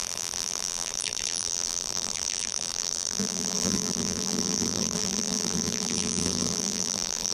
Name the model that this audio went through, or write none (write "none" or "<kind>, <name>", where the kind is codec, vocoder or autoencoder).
vocoder, BigVGAN v2